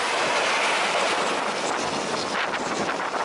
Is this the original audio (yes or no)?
yes